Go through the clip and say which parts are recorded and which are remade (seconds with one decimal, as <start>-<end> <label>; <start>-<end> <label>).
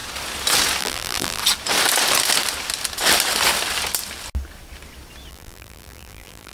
0.0-0.8 recorded; 0.8-1.4 remade; 1.4-5.3 recorded; 5.3-6.5 remade